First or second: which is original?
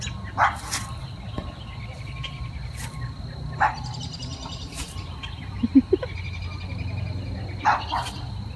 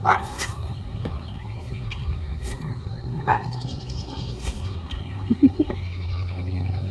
first